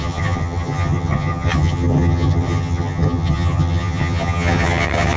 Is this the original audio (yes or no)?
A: no